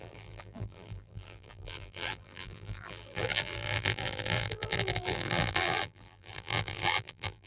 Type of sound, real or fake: fake